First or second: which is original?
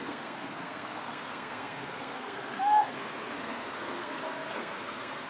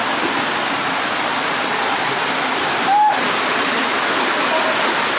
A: second